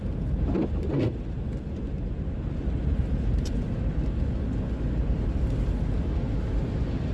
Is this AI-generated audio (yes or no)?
no